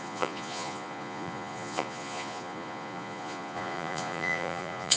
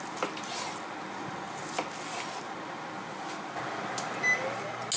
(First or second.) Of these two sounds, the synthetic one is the first